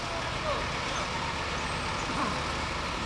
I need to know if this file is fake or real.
real